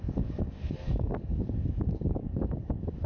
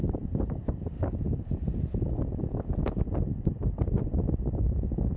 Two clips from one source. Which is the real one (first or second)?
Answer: second